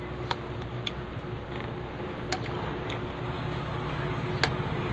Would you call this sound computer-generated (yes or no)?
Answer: no